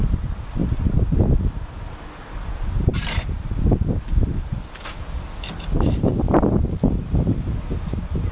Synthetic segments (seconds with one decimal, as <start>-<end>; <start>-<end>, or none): none